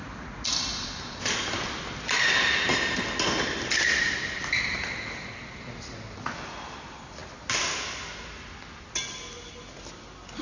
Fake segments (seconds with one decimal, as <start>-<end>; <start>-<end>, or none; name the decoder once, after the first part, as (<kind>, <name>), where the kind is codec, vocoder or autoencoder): none